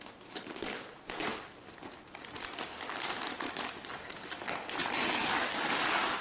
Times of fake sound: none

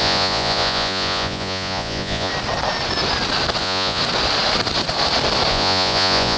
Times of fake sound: 0.0-2.3 (vocoder, Vocos); 3.6-4.0; 5.5-6.4

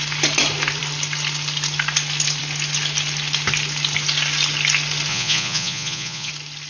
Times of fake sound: 5.1-6.3 (vocoder, Vocos)

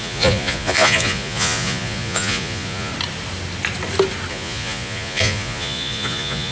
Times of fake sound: 0.0-2.9 (vocoder, Vocos); 4.3-6.5

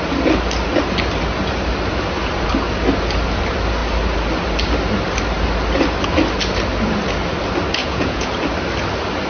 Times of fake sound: 7.8-8.3 (vocoder, Vocos)

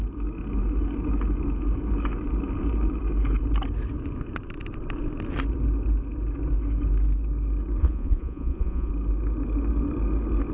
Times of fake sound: 7.8-8.9 (vocoder, Vocos)

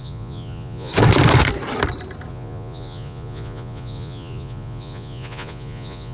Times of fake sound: 0.0-0.9 (vocoder, Vocos); 2.3-6.1

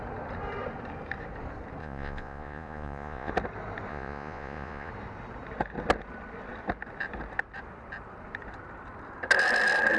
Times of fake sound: 1.8-3.3 (vocoder, Vocos); 3.9-4.9